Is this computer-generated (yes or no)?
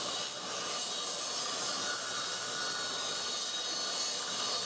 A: no